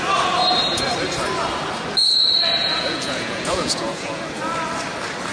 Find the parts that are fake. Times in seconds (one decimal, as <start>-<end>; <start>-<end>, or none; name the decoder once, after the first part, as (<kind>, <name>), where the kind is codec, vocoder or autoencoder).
2.6-4.2 (vocoder, Vocos)